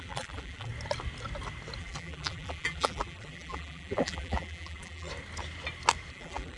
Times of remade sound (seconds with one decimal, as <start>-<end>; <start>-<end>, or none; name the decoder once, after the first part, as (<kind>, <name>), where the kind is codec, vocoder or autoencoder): 0.0-0.7 (vocoder, BigVGAN v2); 1.8-5.1; 6.1-6.6